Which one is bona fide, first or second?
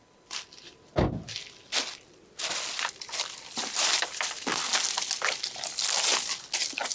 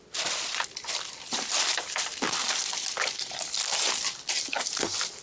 first